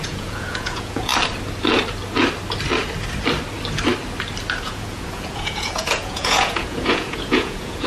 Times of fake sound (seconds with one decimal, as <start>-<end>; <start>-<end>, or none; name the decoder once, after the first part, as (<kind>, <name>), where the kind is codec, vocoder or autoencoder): 0.0-1.1 (vocoder, Vocos); 4.6-7.9

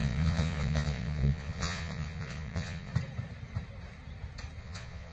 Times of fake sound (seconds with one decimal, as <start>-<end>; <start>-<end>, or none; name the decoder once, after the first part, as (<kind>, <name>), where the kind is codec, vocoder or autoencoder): 0.0-2.9 (vocoder, Vocos); 4.6-5.1

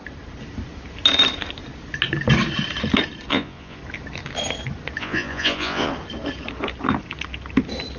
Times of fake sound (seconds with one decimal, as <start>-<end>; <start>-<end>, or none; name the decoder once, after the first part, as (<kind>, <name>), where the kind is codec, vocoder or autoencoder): 3.3-3.8 (vocoder, Vocos); 5.0-5.9

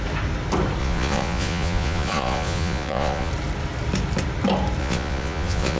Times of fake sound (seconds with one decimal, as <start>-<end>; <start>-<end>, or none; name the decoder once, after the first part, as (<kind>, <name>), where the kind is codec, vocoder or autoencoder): 0.8-3.3 (vocoder, Vocos); 4.8-5.8